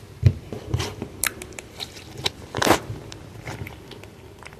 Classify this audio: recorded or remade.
recorded